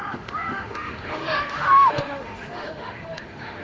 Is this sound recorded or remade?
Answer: remade